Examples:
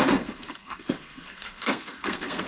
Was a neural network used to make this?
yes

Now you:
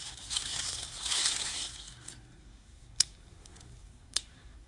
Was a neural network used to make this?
yes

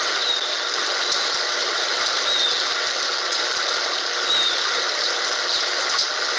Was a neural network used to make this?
no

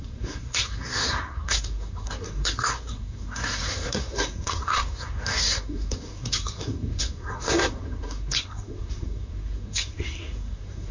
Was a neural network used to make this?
yes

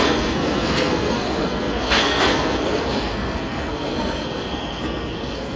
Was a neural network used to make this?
yes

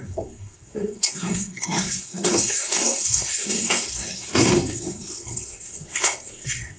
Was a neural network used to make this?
yes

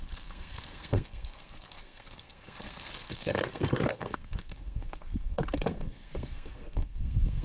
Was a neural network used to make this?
yes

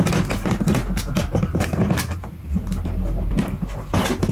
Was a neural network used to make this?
no